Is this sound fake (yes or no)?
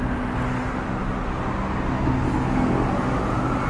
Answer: no